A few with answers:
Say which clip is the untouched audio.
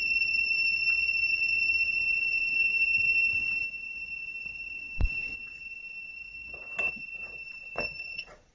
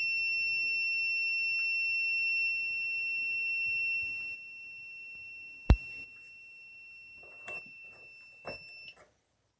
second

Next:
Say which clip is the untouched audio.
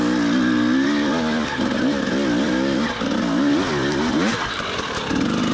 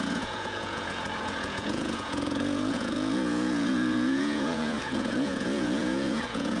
first